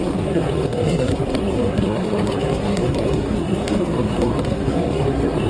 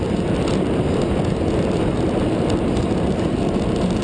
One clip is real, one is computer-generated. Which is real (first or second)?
second